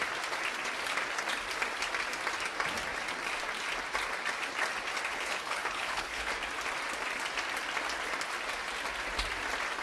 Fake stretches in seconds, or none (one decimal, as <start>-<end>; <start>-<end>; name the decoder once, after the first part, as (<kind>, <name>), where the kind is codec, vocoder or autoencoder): 5.1-6.3 (codec, HILCodec)